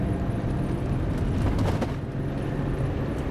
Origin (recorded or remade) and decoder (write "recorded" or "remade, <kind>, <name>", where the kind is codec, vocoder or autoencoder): recorded